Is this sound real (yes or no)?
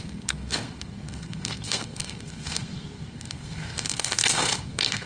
no